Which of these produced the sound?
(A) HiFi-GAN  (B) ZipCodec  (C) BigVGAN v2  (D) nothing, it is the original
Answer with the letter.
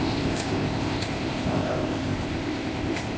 B